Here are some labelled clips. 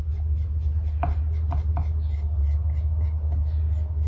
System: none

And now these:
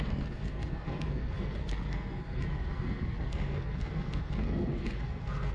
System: codec, SNAC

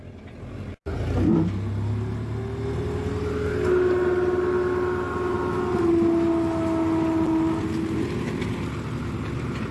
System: none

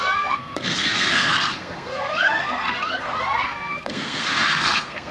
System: codec, SNAC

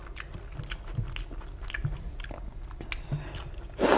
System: none